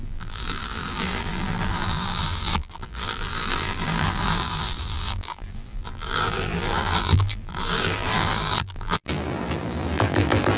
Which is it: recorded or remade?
remade